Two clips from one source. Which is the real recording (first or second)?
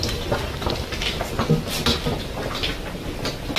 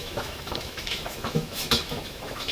first